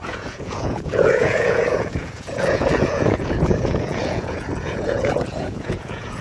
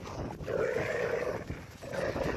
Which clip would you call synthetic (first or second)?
first